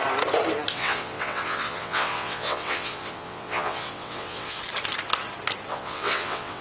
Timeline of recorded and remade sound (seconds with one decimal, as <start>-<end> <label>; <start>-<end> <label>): 0.0-0.7 recorded; 0.7-4.6 remade; 4.6-5.7 recorded; 5.7-6.6 remade